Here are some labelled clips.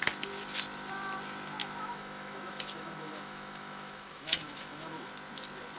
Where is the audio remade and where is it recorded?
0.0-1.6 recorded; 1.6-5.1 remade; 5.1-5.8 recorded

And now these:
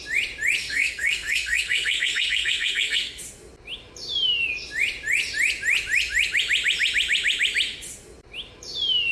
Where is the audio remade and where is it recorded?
0.0-0.6 recorded; 0.6-3.2 remade; 3.2-9.1 recorded

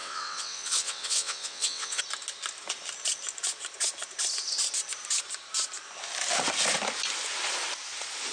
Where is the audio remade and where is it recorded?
0.0-2.0 remade; 2.0-8.3 recorded

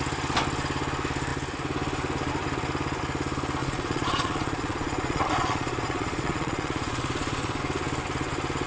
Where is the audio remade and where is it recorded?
0.0-3.6 recorded; 3.6-7.6 remade; 7.6-8.7 recorded

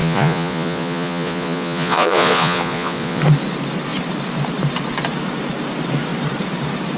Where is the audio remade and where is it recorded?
0.0-3.2 remade; 3.2-7.0 recorded

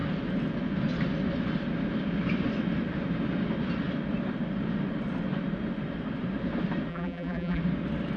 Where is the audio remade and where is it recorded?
0.0-6.9 recorded; 6.9-7.6 remade; 7.6-8.2 recorded

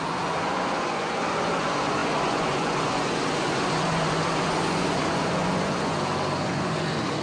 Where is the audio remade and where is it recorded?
0.0-7.2 remade